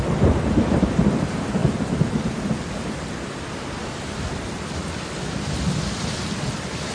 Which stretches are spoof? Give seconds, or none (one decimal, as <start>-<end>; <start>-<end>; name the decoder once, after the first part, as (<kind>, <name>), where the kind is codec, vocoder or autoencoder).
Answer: none